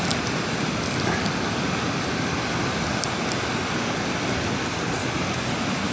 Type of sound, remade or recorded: recorded